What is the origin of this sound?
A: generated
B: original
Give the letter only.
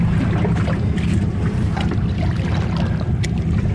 B